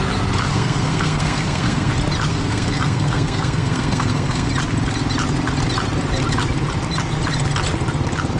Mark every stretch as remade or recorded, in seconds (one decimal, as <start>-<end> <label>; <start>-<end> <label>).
0.0-0.5 recorded; 0.5-1.9 remade; 1.9-2.3 recorded; 2.3-4.5 remade; 4.5-8.4 recorded